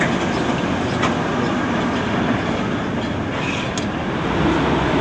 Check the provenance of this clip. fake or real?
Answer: real